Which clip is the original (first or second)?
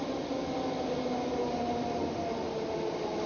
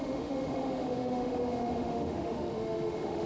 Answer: first